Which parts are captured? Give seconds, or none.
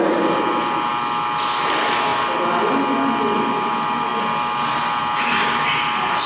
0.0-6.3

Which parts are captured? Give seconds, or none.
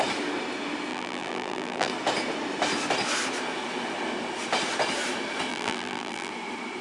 0.0-0.9; 1.9-5.5; 6.3-6.8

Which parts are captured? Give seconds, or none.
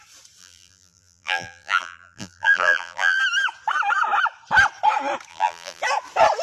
0.0-0.4; 3.2-5.3; 5.8-6.4